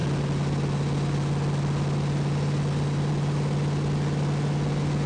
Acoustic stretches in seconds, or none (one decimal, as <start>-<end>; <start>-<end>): 0.0-5.1